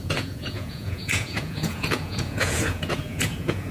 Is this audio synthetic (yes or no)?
yes